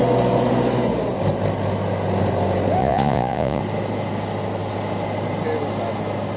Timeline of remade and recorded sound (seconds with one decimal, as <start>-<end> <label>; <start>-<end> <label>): 0.0-2.8 recorded; 2.8-3.6 remade; 3.6-6.4 recorded